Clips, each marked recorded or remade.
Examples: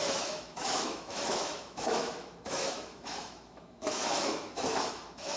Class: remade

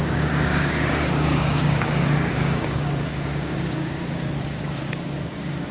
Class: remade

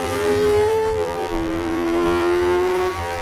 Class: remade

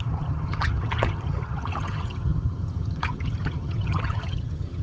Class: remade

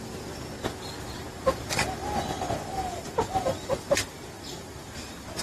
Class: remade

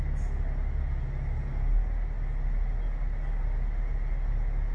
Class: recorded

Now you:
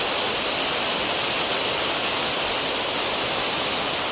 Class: recorded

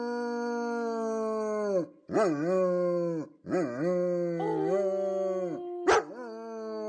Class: recorded